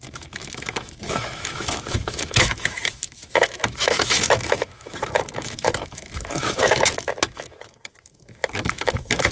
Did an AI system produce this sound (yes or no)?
yes